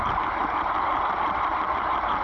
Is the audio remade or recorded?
recorded